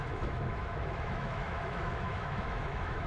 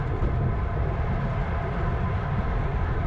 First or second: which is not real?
first